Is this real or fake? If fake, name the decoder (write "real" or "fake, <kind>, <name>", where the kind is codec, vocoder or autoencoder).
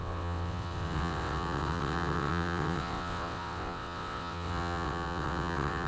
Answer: fake, vocoder, WaveNeXt